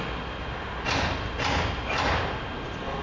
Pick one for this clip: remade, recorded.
recorded